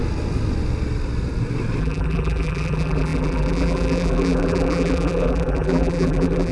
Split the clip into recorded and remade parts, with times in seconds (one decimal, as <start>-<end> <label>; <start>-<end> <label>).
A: 0.0-1.8 recorded; 1.8-6.5 remade